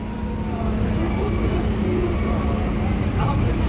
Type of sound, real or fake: real